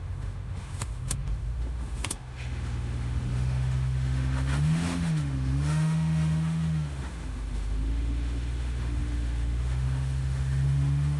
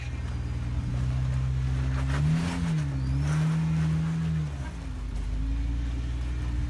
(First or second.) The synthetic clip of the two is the first